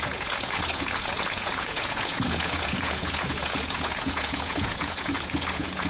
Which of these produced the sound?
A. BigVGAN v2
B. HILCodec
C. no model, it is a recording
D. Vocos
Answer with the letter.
D